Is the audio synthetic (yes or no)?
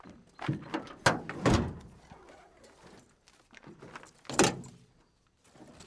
no